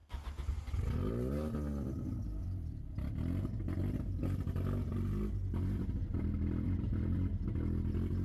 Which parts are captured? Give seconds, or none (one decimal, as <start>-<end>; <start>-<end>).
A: 0.0-2.4; 7.3-8.2